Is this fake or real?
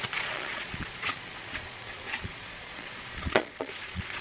fake